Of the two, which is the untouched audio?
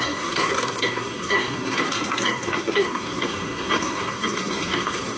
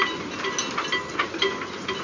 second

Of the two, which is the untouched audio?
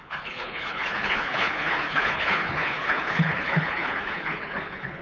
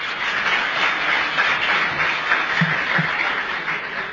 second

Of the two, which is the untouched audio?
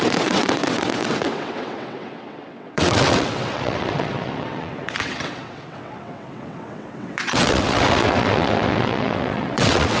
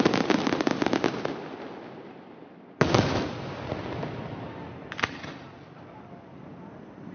second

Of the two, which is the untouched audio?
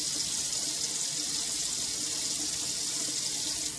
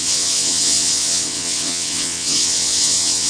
first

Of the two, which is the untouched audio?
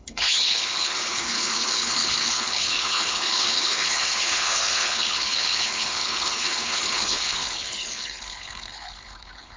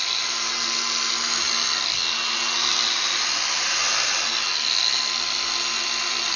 second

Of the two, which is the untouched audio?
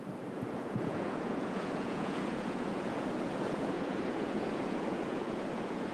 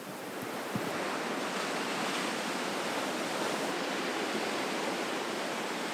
second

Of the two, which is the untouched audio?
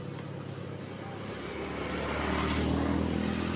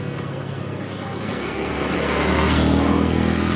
first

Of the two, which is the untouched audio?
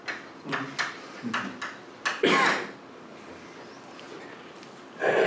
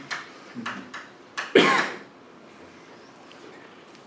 first